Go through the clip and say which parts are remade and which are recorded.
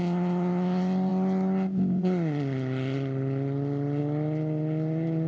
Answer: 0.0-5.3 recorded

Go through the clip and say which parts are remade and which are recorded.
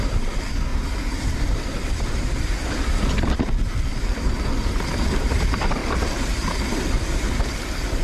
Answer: 0.0-0.7 remade; 0.7-1.2 recorded; 1.2-8.0 remade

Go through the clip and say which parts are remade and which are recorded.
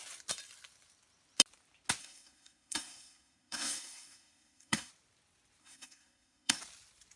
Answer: 0.0-2.0 recorded; 2.0-4.9 remade; 4.9-5.6 recorded; 5.6-6.6 remade; 6.6-7.2 recorded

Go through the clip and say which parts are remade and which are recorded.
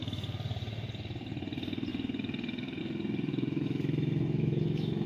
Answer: 0.0-3.3 recorded; 3.3-5.1 remade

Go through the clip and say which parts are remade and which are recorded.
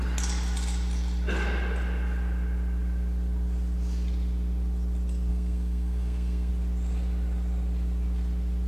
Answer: 0.0-5.3 recorded; 5.3-6.5 remade; 6.5-8.7 recorded